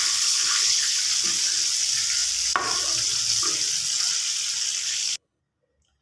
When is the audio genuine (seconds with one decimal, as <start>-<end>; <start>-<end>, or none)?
1.0-4.8; 5.4-6.0